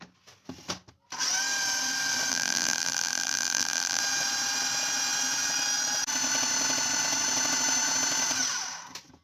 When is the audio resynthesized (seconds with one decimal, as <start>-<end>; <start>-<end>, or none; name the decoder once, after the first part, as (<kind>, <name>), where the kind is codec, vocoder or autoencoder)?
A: 2.3-4.0 (vocoder, BigVGAN v2)